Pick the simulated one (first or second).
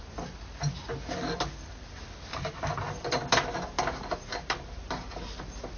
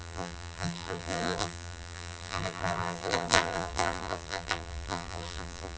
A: second